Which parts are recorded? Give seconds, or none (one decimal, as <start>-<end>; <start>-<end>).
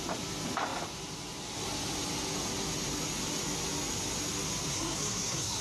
0.0-4.7